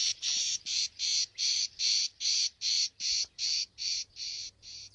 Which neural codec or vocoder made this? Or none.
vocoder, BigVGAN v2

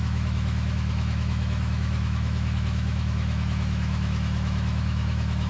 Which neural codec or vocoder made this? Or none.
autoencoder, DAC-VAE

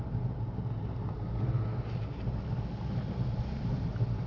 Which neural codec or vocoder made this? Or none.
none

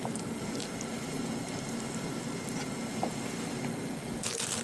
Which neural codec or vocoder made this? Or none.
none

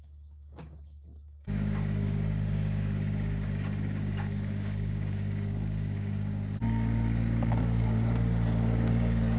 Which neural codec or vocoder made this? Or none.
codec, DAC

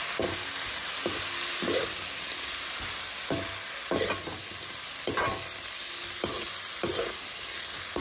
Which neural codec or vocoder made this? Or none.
none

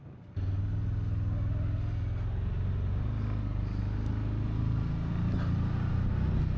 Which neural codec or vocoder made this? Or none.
none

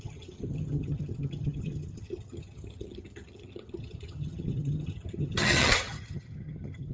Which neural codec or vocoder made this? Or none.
vocoder, HiFi-GAN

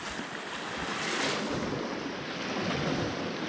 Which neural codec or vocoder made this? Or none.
none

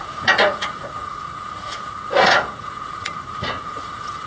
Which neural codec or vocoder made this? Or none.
vocoder, Vocos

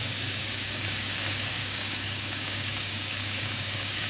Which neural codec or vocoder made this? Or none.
codec, DAC